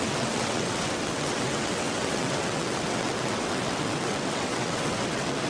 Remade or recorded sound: remade